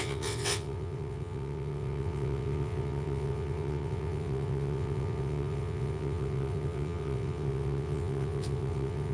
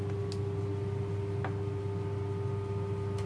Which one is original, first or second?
second